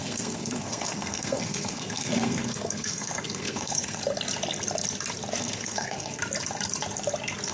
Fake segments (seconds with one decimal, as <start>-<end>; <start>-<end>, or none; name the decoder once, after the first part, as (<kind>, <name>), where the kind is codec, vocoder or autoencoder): 0.0-4.0 (codec, SNAC); 5.4-6.2